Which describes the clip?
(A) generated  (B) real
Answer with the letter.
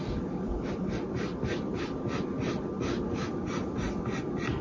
B